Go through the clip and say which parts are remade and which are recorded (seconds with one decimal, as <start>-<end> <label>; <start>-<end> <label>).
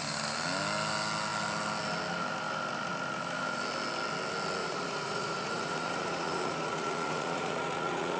0.0-4.6 recorded; 4.6-8.2 remade